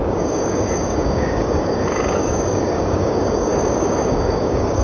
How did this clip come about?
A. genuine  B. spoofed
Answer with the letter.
B